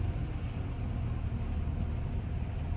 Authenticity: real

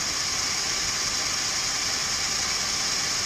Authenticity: real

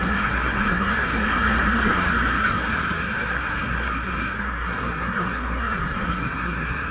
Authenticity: fake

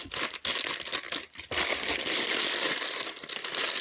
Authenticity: real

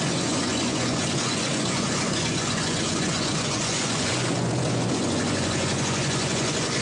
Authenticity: fake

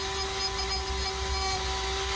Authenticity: real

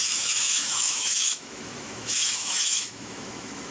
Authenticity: fake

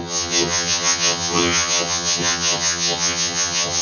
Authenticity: fake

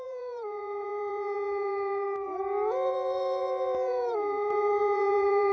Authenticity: fake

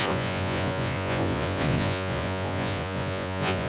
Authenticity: fake